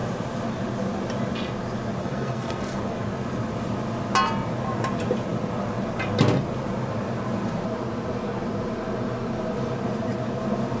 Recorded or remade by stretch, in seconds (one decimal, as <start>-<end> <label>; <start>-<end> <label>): 0.0-2.0 recorded; 2.0-2.8 remade; 2.8-10.8 recorded